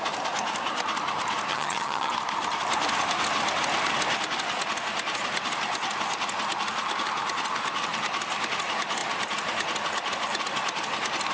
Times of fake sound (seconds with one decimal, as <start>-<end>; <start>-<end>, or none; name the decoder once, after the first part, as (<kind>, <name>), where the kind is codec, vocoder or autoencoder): 1.5-2.1 (vocoder, HiFi-GAN)